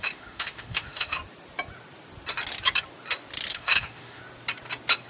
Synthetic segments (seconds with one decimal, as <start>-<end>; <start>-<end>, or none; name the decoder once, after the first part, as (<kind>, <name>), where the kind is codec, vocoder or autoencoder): 0.0-1.2 (autoencoder, DAC-VAE); 3.5-4.2